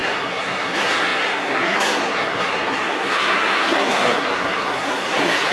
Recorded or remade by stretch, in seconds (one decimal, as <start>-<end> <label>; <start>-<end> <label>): 0.0-5.5 remade